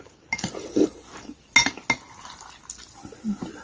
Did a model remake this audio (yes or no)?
no